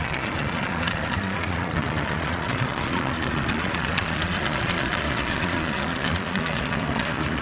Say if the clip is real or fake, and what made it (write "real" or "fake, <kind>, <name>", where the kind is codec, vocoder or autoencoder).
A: fake, vocoder, Vocos